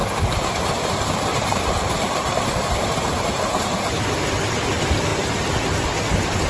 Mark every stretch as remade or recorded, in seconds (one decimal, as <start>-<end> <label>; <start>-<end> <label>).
0.0-0.6 remade; 0.6-1.3 recorded; 1.3-4.0 remade; 4.0-6.5 recorded